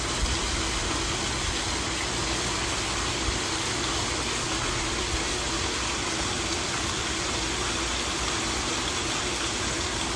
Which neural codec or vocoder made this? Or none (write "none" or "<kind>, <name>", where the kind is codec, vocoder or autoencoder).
none